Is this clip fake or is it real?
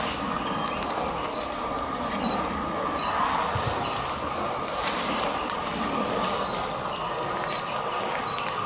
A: real